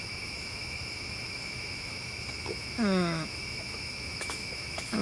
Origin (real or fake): fake